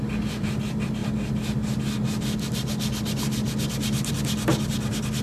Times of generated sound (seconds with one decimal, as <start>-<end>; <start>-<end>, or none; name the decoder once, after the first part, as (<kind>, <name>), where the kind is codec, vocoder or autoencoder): none